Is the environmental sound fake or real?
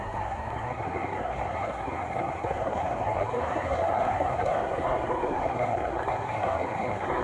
fake